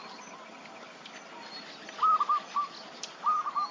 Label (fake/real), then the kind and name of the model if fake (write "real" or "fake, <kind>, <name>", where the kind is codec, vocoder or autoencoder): real